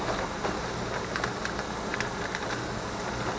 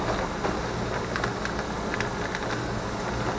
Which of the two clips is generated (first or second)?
first